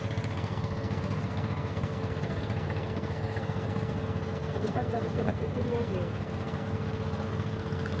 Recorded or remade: remade